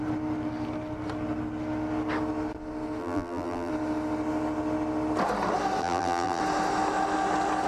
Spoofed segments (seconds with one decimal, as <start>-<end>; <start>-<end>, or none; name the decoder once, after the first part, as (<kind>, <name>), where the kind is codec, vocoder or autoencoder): 3.0-3.7 (vocoder, BigVGAN v2); 5.8-6.4